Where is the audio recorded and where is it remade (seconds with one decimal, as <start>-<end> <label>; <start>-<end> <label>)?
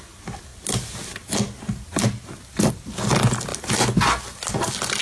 0.0-5.0 recorded